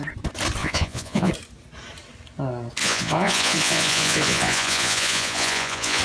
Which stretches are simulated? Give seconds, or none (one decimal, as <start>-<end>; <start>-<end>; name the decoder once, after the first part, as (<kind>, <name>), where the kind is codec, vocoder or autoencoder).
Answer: 0.6-1.3 (vocoder, Vocos); 2.8-6.0